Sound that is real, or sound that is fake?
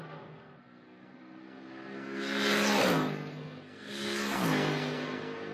fake